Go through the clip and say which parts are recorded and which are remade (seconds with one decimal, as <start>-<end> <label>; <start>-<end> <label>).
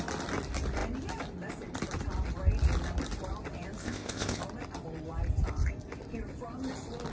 0.0-3.8 recorded; 3.8-4.4 remade; 4.4-7.1 recorded